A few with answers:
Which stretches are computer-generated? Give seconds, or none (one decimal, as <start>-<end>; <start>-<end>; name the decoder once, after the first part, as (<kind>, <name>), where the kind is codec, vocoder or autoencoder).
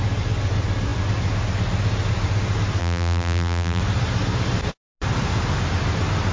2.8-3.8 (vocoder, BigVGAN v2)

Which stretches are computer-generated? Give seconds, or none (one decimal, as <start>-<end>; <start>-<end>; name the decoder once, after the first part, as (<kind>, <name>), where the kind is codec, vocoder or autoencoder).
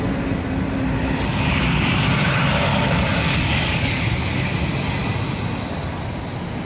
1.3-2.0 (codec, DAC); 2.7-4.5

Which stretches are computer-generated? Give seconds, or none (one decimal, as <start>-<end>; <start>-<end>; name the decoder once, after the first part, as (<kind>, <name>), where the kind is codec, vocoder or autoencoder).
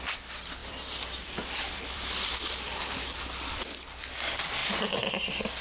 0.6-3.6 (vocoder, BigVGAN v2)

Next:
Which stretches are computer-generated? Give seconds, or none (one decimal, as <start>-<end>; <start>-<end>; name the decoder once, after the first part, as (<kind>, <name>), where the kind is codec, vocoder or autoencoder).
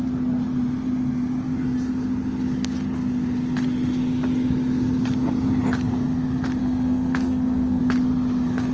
6.6-7.8 (codec, SNAC)